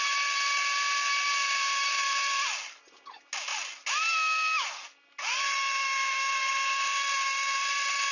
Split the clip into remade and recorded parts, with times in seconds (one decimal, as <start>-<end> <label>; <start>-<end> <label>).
0.0-8.1 recorded